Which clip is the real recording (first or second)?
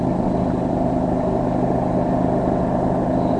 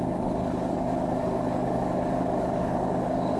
first